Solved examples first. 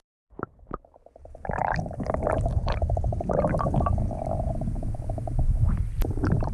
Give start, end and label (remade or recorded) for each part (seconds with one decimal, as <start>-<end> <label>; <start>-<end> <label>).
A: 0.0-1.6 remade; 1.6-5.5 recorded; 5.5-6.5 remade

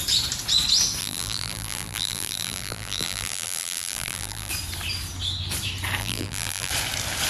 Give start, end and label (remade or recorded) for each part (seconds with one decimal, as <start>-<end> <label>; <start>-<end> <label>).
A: 0.0-1.0 recorded; 1.0-4.5 remade; 4.5-6.0 recorded; 6.0-6.7 remade; 6.7-7.3 recorded

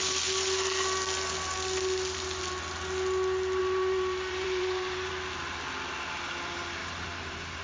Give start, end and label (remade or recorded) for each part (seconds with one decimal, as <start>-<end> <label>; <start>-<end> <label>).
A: 0.0-3.6 recorded; 3.6-5.1 remade; 5.1-6.8 recorded; 6.8-7.6 remade

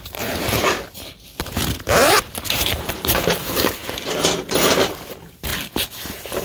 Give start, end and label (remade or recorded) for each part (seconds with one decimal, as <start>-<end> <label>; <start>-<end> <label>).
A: 0.0-0.6 remade; 0.6-1.4 recorded; 1.4-3.8 remade; 3.8-5.1 recorded; 5.1-5.5 remade; 5.5-6.0 recorded; 6.0-6.4 remade

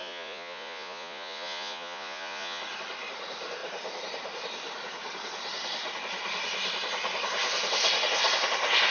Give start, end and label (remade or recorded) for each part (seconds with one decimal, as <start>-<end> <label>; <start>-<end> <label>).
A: 0.0-2.6 remade; 2.6-8.9 recorded